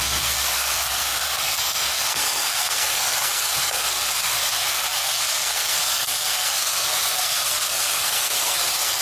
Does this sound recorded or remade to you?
remade